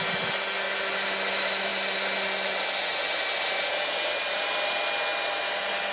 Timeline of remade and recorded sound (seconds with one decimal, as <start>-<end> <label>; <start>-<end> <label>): 0.0-5.9 recorded

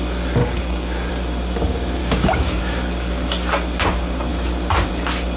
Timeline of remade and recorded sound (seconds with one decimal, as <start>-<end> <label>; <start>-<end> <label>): 0.0-0.4 recorded; 0.4-1.1 remade; 1.1-2.0 recorded; 2.0-2.6 remade; 2.6-5.4 recorded

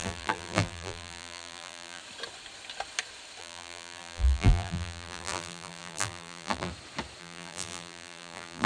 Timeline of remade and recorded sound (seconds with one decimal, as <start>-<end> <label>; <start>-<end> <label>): 0.0-2.0 remade; 2.0-3.4 recorded; 3.4-6.7 remade; 6.7-7.2 recorded; 7.2-8.7 remade

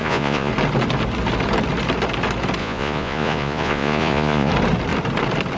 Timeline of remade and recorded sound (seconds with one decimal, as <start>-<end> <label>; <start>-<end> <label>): 0.0-0.5 remade; 0.5-2.6 recorded; 2.6-4.5 remade; 4.5-5.6 recorded

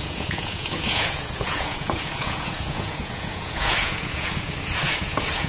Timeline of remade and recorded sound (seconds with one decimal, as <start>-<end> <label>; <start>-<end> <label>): 0.0-5.5 remade

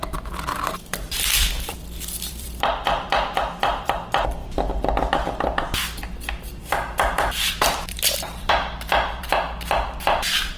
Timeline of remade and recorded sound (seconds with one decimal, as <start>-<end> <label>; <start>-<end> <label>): 0.0-4.4 remade; 4.4-6.4 recorded; 6.4-10.6 remade

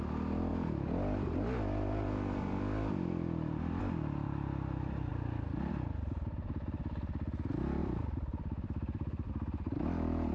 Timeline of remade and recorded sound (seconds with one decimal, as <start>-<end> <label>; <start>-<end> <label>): 0.0-0.5 recorded; 0.5-3.8 remade; 3.8-7.8 recorded; 7.8-9.3 remade; 9.3-10.3 recorded